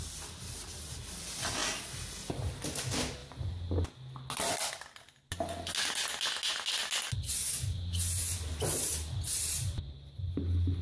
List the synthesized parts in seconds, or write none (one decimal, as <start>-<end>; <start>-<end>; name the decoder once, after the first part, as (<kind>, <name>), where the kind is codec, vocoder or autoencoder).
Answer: none